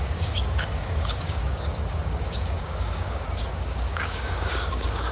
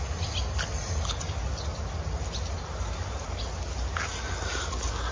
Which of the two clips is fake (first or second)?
first